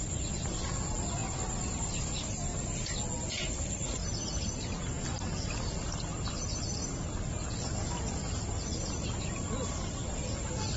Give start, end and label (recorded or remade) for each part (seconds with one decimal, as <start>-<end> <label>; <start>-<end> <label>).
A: 0.0-2.5 remade; 2.5-3.5 recorded; 3.5-10.8 remade